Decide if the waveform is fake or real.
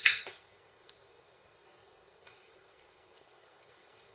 fake